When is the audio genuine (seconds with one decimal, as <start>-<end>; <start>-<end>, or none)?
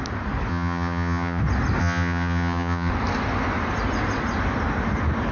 0.0-0.5; 1.4-1.8; 2.9-5.3